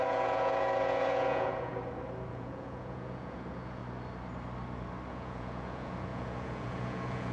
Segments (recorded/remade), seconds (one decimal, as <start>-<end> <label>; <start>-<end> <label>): 0.0-1.7 remade; 1.7-2.3 recorded; 2.3-3.8 remade; 3.8-5.1 recorded; 5.1-7.3 remade